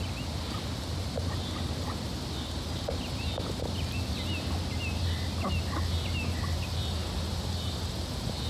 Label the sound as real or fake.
real